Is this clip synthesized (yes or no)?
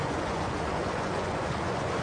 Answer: yes